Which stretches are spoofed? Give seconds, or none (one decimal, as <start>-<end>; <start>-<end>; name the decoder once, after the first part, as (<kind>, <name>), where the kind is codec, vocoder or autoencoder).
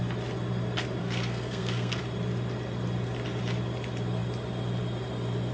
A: 1.0-2.0 (codec, SNAC)